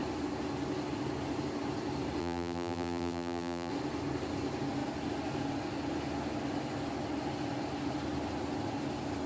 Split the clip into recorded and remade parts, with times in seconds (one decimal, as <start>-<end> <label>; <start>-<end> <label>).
0.0-2.2 recorded; 2.2-3.7 remade; 3.7-9.3 recorded